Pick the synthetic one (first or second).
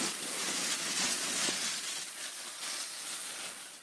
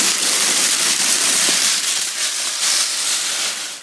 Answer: first